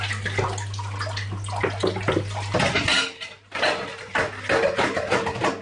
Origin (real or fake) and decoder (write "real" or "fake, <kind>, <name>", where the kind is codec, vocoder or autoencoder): real